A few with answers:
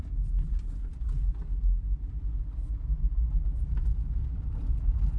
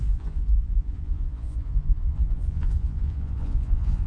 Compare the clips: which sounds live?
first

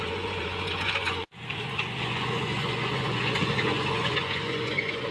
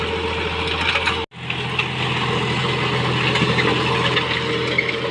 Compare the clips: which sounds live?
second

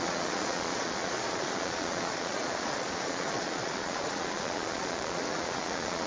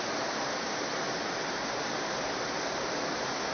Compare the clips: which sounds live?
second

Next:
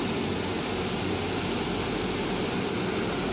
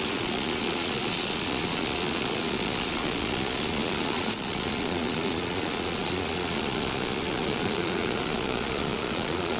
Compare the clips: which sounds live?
first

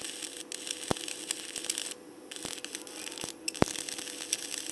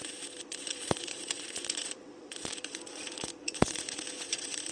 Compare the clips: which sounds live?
first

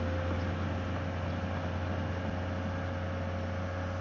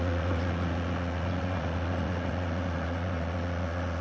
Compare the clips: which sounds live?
first